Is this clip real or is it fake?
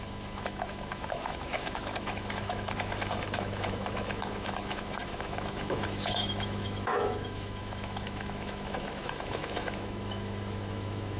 fake